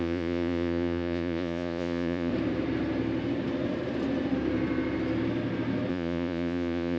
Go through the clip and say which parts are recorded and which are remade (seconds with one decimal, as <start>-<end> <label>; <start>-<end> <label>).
0.0-2.3 remade; 2.3-5.9 recorded; 5.9-7.0 remade